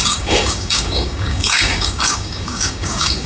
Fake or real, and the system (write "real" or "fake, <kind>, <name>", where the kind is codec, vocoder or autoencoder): fake, codec, DAC